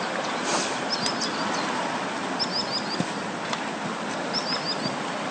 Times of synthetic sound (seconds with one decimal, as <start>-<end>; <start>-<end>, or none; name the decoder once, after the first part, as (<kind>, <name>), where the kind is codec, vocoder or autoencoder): none